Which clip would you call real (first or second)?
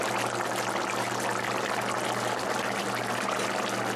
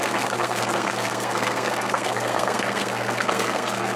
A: first